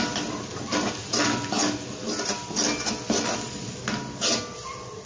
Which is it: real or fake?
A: real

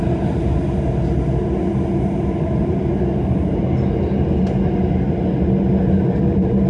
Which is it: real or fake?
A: real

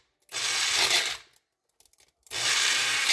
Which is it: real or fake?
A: real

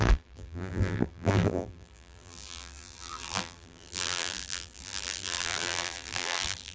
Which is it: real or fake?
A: fake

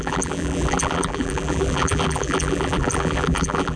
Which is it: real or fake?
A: fake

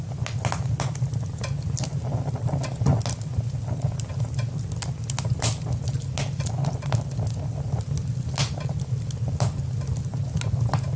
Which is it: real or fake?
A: real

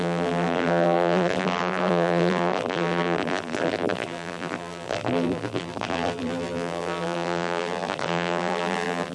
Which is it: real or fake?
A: fake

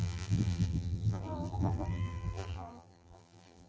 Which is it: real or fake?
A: fake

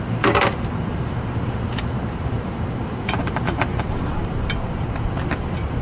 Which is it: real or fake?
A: fake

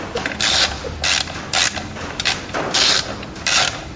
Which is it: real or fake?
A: fake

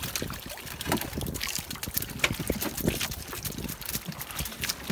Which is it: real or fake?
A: real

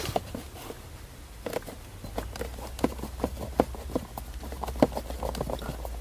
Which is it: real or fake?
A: real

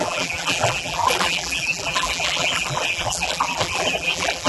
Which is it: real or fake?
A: fake